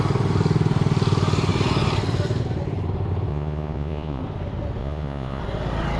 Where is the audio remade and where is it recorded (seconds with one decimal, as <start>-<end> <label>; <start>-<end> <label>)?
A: 0.0-3.3 recorded; 3.3-4.2 remade; 4.2-4.8 recorded; 4.8-5.4 remade; 5.4-6.0 recorded